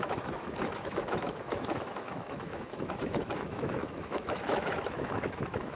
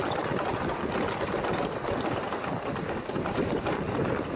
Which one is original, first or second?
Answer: second